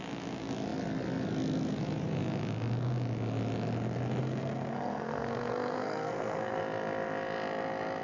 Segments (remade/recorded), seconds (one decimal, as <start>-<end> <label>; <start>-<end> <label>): 0.0-4.2 recorded; 4.2-6.6 remade; 6.6-8.0 recorded